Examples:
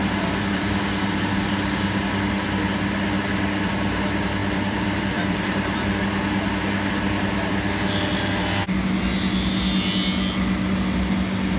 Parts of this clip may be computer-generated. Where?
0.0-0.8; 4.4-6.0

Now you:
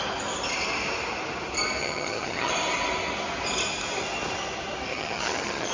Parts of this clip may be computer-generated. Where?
1.8-2.5; 4.9-5.7

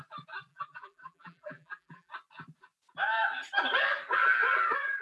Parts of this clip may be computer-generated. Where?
0.5-2.1